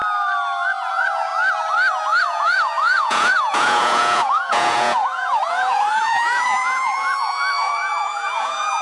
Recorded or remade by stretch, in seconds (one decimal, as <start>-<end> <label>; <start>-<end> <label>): 0.0-0.9 recorded; 0.9-1.3 remade; 1.3-2.2 recorded; 2.2-8.8 remade